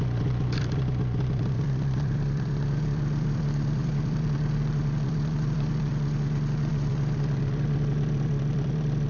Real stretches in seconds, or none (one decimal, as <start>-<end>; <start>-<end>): 5.9-6.7